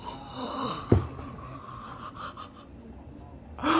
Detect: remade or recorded recorded